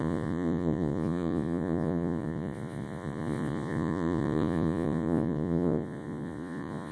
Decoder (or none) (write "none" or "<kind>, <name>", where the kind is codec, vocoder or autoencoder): vocoder, Vocos